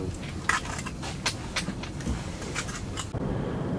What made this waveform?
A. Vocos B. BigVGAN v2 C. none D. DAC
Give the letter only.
C